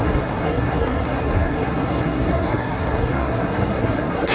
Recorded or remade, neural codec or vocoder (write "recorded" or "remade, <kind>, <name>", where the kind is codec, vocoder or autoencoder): remade, codec, SNAC